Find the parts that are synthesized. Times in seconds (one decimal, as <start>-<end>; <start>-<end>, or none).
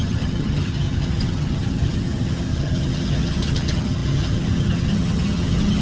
0.0-5.8